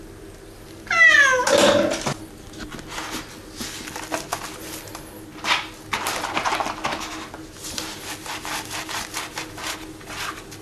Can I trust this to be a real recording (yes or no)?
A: yes